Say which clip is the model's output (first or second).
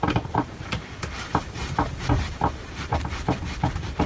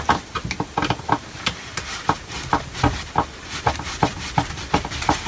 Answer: first